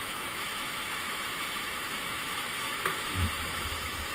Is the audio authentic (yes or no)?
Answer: no